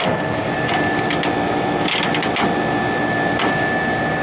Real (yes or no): yes